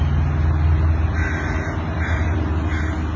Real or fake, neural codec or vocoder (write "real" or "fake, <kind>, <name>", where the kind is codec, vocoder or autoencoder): real